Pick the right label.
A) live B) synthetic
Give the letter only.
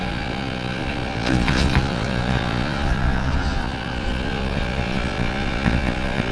B